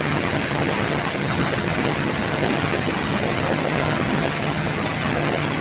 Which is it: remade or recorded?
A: remade